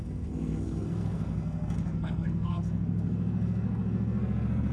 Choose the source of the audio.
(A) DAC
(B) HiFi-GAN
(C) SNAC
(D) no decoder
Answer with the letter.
C